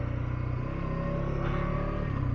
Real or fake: real